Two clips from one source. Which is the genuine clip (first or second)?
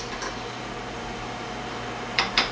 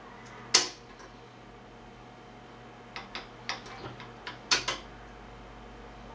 second